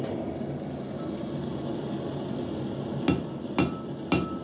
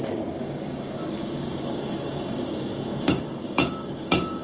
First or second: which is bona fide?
first